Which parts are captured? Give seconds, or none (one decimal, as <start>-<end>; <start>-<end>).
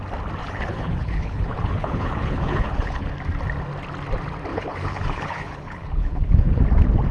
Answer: 0.0-0.4; 3.1-4.5; 6.6-7.1